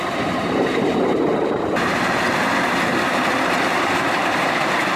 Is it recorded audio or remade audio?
remade